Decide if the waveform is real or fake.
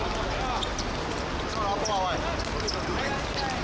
real